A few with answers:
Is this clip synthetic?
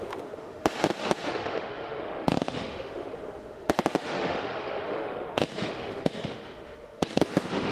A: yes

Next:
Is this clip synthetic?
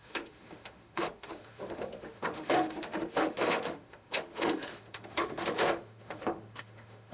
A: yes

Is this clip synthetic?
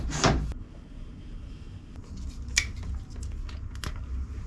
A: no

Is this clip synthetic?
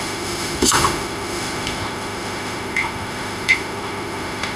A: yes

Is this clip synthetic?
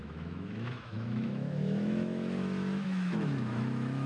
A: yes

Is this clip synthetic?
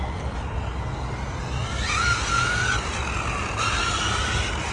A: no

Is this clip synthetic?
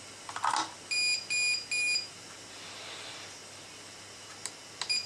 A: no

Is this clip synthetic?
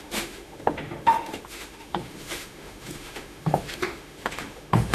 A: yes